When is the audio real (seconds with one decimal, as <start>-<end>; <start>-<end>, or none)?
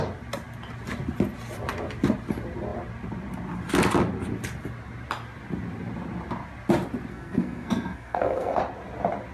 0.0-7.1; 8.6-9.3